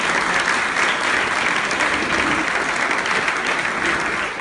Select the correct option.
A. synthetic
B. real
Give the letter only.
B